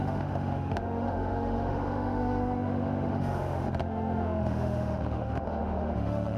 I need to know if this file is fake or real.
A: fake